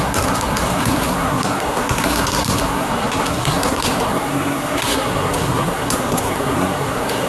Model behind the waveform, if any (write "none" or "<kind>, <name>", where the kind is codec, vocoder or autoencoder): codec, SNAC